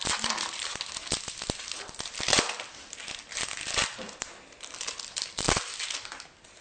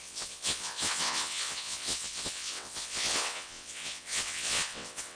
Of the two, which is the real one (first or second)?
first